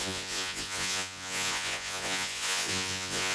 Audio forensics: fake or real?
fake